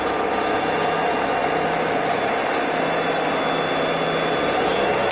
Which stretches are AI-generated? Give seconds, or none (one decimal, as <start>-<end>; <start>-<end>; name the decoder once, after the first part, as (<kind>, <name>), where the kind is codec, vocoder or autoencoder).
none

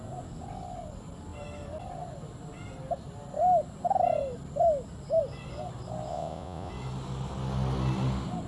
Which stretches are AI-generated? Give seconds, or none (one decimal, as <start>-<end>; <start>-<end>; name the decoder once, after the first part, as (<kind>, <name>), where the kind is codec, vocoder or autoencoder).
6.1-6.7 (vocoder, Vocos)

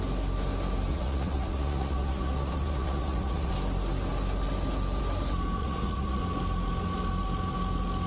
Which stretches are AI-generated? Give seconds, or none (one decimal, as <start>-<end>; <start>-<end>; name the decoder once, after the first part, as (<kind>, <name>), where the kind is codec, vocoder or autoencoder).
0.9-3.5 (vocoder, Vocos); 5.6-6.2